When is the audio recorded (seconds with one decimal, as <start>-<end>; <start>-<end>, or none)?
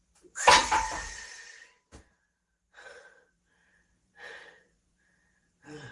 none